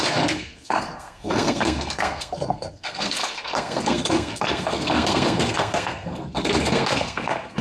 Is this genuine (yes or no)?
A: no